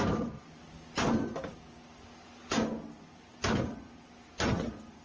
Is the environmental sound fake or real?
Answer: real